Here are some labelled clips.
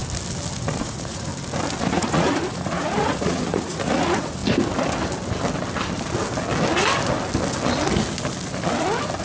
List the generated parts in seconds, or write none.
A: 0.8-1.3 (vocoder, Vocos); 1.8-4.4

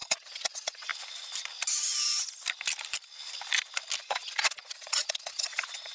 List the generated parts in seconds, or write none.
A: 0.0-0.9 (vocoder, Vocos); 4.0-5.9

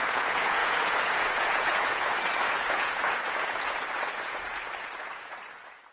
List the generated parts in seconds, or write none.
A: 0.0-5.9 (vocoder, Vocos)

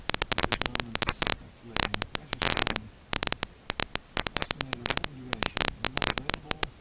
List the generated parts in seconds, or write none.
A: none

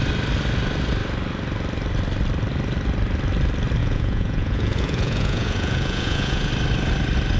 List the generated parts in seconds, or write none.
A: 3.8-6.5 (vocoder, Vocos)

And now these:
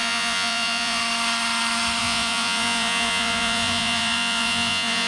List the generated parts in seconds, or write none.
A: 0.0-1.0 (vocoder, Vocos); 2.0-5.1